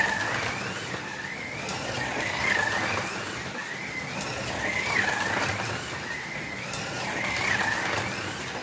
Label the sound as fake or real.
real